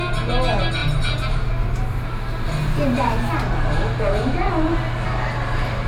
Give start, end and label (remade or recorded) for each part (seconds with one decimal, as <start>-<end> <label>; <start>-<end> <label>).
0.0-0.8 recorded; 0.8-1.5 remade; 1.5-2.6 recorded; 2.6-4.8 remade; 4.8-5.9 recorded